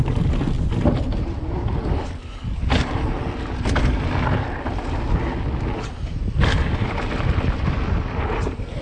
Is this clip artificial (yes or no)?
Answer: no